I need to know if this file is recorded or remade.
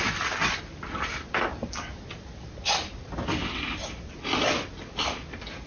recorded